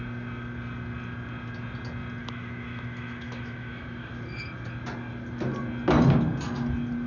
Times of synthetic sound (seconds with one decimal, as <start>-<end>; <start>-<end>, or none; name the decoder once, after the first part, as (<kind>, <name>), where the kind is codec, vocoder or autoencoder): 2.2-4.1 (autoencoder, DAC-VAE)